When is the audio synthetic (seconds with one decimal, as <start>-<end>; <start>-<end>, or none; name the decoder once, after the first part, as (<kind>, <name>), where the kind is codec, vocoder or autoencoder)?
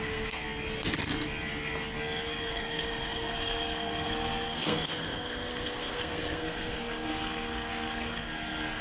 0.0-0.4 (codec, SNAC); 2.5-8.8